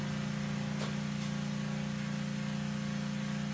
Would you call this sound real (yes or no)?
yes